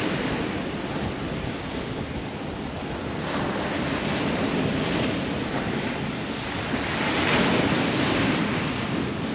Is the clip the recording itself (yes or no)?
yes